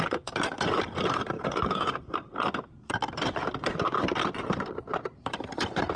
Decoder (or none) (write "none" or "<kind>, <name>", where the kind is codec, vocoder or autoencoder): vocoder, BigVGAN v2